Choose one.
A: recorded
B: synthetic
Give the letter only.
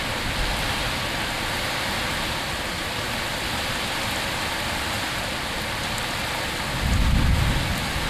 A